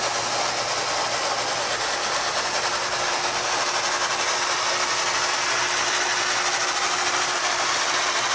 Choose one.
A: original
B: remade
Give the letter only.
A